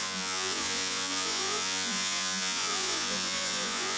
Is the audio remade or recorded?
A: remade